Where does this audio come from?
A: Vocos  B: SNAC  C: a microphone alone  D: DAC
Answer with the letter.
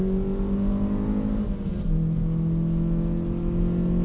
C